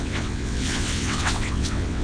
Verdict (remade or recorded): remade